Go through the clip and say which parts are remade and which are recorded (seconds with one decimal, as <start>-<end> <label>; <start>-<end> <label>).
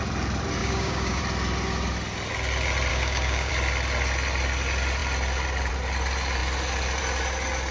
0.0-0.6 recorded; 0.6-1.2 remade; 1.2-2.9 recorded; 2.9-3.5 remade; 3.5-7.7 recorded